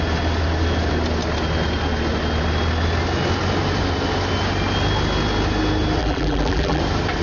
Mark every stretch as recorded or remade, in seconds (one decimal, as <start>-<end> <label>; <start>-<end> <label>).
0.0-6.0 recorded; 6.0-6.8 remade; 6.8-7.2 recorded